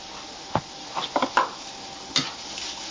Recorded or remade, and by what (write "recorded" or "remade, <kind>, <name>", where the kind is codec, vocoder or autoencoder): recorded